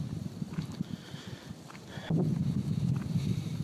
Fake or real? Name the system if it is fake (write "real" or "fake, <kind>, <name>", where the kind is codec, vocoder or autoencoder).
real